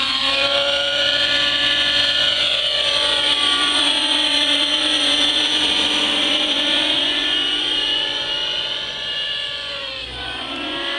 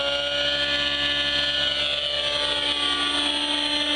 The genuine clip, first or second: second